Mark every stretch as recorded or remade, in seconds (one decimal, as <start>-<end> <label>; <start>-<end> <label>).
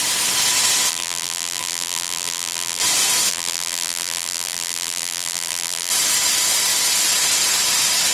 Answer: 0.0-0.9 recorded; 0.9-2.8 remade; 2.8-3.3 recorded; 3.3-5.9 remade; 5.9-8.1 recorded